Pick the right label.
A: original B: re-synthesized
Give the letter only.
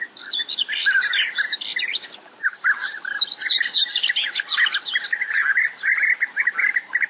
A